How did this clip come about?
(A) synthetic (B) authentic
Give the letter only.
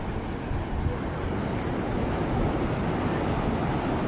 B